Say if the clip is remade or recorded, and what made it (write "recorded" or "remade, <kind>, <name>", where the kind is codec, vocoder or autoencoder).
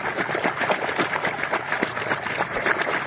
recorded